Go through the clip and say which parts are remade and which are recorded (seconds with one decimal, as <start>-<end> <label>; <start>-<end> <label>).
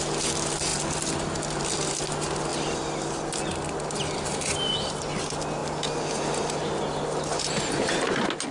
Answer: 0.0-8.5 recorded